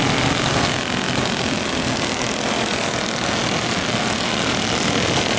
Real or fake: real